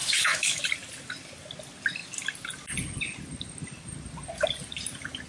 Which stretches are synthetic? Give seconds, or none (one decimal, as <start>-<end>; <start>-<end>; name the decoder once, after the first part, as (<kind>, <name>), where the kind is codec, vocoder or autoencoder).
0.0-0.6 (autoencoder, DAC-VAE)